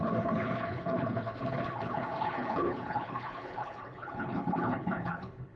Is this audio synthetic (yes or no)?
yes